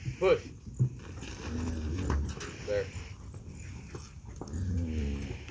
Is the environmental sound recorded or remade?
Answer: recorded